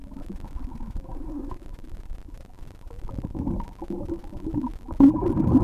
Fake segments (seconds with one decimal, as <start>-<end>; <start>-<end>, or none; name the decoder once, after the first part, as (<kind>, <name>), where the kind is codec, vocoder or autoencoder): 0.0-3.4 (vocoder, BigVGAN v2); 4.2-4.7